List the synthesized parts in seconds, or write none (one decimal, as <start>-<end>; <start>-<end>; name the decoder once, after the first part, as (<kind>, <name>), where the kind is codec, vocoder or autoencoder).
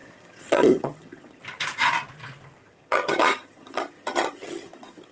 0.0-1.4 (vocoder, HiFi-GAN); 2.6-5.1